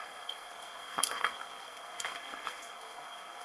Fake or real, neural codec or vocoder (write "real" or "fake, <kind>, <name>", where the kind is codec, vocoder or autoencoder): fake, codec, SNAC